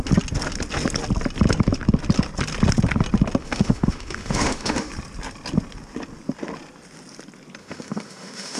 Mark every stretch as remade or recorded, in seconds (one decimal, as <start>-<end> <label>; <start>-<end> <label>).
0.0-3.4 recorded; 3.4-4.9 remade; 4.9-7.6 recorded; 7.6-8.6 remade